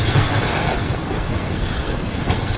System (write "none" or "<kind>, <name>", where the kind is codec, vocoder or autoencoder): codec, SNAC